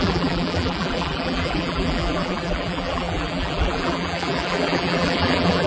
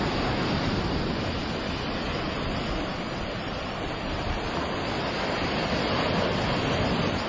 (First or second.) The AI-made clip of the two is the first